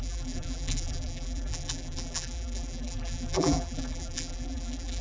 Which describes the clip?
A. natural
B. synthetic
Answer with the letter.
B